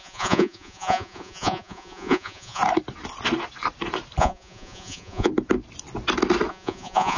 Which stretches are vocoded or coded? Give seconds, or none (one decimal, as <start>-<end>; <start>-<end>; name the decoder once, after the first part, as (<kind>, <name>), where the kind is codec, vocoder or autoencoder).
0.0-2.6 (vocoder, Vocos); 4.2-5.3; 6.5-7.2